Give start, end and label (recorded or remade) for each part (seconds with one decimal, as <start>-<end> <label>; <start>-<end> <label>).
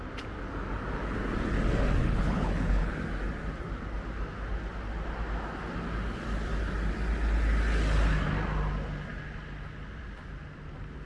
0.0-2.0 recorded; 2.0-2.9 remade; 2.9-11.1 recorded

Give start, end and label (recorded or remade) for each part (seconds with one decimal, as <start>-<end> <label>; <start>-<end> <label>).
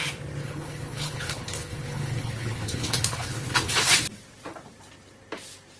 0.0-0.4 recorded; 0.4-3.9 remade; 3.9-5.8 recorded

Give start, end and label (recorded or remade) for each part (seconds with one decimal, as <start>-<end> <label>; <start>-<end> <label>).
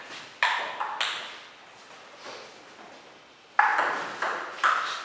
0.0-5.0 recorded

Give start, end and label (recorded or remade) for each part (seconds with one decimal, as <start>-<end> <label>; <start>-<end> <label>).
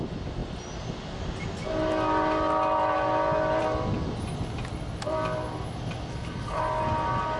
0.0-6.1 recorded; 6.1-6.6 remade; 6.6-7.4 recorded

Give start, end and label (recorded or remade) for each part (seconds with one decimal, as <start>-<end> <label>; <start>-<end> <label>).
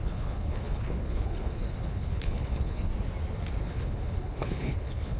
0.0-2.9 remade; 2.9-3.6 recorded; 3.6-5.2 remade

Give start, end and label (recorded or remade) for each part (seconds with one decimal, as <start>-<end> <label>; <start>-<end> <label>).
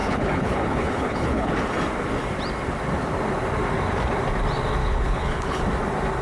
0.0-1.5 remade; 1.5-4.8 recorded; 4.8-5.6 remade; 5.6-6.2 recorded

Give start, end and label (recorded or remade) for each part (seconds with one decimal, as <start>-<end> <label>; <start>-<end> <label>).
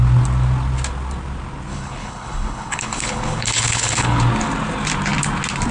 0.0-1.7 recorded; 1.7-4.2 remade; 4.2-5.7 recorded